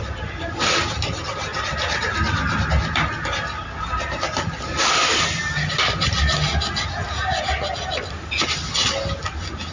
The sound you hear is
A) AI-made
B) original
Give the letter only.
B